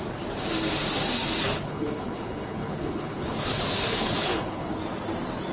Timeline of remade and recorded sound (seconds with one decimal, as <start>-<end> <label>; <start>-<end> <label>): 0.0-1.5 recorded; 1.5-4.8 remade; 4.8-5.5 recorded

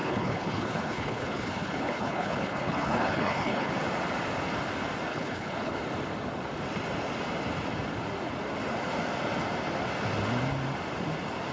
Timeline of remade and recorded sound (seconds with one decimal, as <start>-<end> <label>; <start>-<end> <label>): 0.0-3.7 remade; 3.7-5.1 recorded; 5.1-5.8 remade; 5.8-11.5 recorded

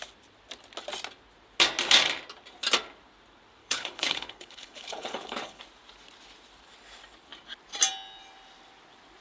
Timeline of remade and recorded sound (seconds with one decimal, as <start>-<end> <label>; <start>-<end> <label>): 0.0-3.6 recorded; 3.6-5.6 remade; 5.6-9.2 recorded

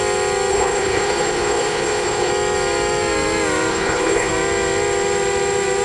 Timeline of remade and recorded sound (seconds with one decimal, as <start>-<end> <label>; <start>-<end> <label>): 0.0-0.5 recorded; 0.5-2.3 remade; 2.3-3.7 recorded; 3.7-4.3 remade; 4.3-5.8 recorded

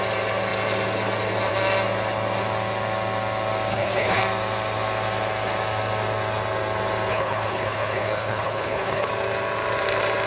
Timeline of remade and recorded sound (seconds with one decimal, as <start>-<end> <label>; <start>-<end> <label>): 0.0-3.7 recorded; 3.7-4.2 remade; 4.2-7.1 recorded; 7.1-9.1 remade; 9.1-10.3 recorded